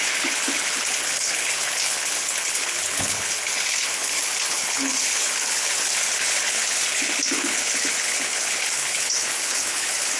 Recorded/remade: remade